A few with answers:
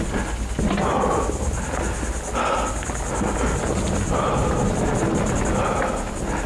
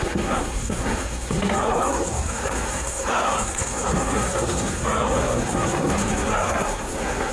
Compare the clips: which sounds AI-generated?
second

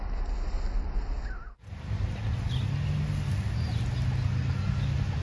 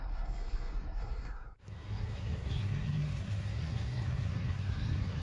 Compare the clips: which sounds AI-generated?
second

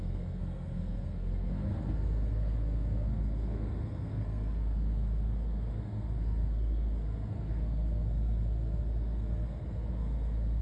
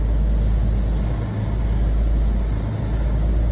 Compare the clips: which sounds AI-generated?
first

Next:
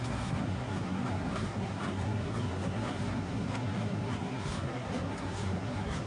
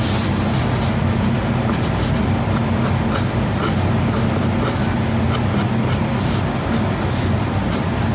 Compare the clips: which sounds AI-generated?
first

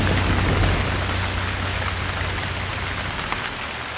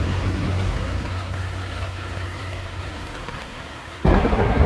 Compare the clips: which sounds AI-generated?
second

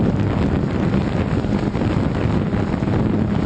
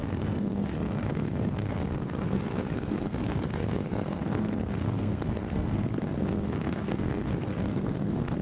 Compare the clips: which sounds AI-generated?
second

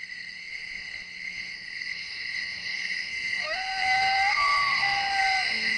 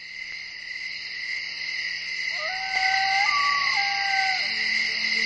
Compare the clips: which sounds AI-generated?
first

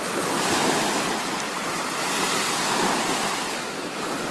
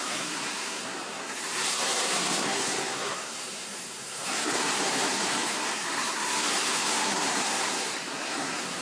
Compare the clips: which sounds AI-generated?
second